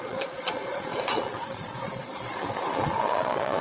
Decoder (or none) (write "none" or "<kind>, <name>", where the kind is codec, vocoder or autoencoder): vocoder, Vocos